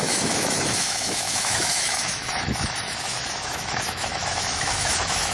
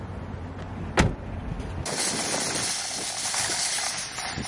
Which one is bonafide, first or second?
second